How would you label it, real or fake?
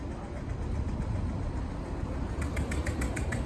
real